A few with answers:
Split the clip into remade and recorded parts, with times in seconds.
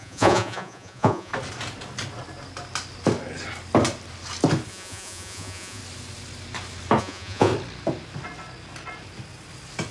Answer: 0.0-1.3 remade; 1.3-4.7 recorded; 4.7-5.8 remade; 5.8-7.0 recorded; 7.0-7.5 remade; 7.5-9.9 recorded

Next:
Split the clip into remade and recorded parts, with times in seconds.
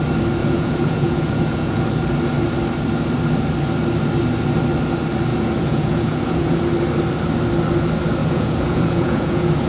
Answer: 0.0-0.4 recorded; 0.4-1.8 remade; 1.8-5.3 recorded; 5.3-6.6 remade; 6.6-8.2 recorded; 8.2-9.7 remade